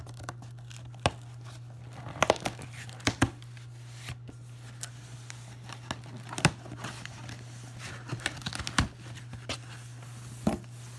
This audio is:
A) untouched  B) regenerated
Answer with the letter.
A